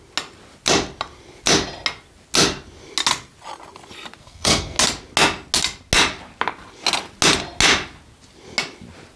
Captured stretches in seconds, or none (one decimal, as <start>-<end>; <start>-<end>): 0.0-4.2; 4.8-9.2